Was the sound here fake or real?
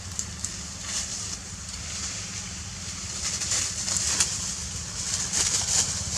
fake